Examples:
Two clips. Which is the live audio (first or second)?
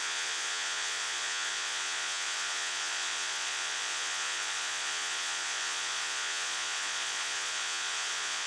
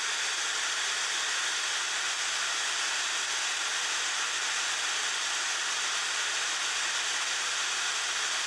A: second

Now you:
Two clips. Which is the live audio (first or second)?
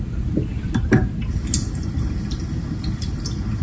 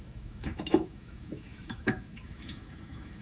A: first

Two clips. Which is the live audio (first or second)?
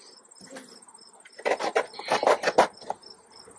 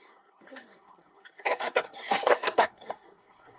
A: first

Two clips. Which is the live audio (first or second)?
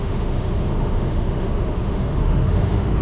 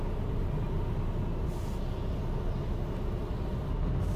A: second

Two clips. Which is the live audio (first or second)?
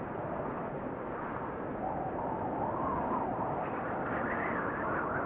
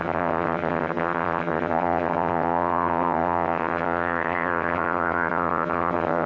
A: first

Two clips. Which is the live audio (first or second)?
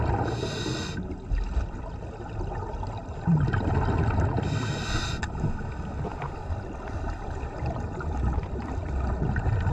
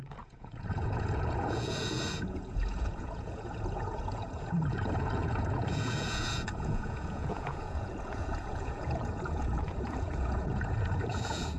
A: first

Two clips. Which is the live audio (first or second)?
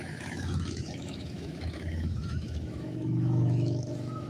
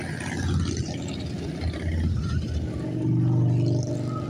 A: second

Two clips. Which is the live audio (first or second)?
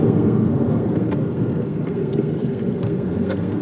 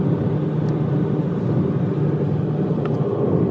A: second